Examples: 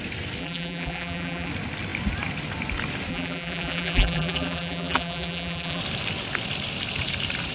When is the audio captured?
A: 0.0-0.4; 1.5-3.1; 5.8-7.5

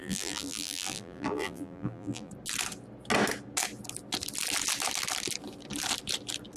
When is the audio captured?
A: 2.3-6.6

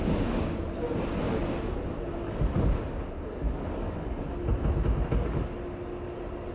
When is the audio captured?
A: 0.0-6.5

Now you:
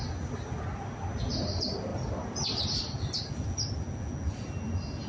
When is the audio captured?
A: 0.0-5.1

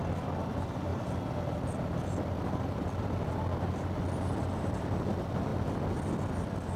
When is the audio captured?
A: 0.0-0.9; 3.3-5.5; 6.2-6.8